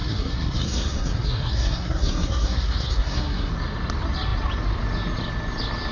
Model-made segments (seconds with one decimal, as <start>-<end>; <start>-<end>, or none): 0.0-3.5